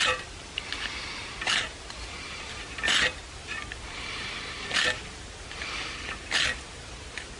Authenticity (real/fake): real